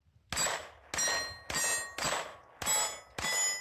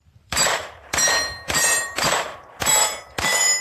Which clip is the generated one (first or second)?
second